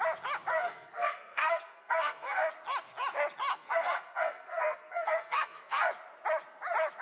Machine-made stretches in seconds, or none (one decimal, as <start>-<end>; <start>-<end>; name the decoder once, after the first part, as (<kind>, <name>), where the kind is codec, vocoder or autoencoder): 0.5-2.5 (codec, SNAC); 3.5-5.9